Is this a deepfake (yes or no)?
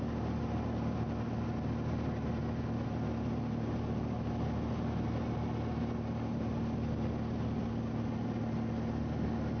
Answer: no